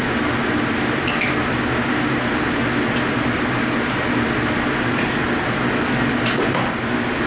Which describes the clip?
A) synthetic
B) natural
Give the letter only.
B